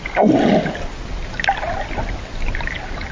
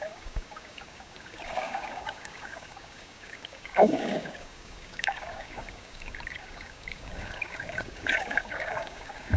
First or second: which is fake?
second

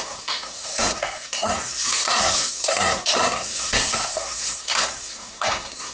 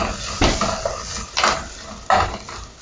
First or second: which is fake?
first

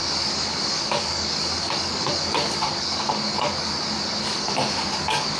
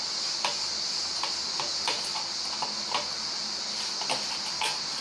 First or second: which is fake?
first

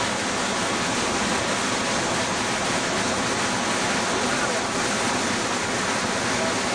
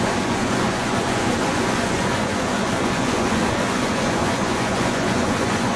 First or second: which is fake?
second